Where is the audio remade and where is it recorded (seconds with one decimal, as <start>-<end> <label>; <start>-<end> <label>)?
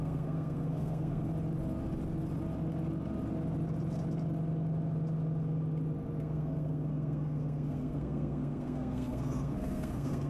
0.0-1.3 remade; 1.3-6.2 recorded; 6.2-10.3 remade